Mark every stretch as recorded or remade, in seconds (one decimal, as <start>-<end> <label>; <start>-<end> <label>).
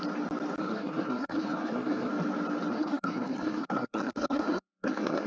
0.0-0.6 recorded; 0.6-2.1 remade; 2.1-2.7 recorded; 2.7-5.3 remade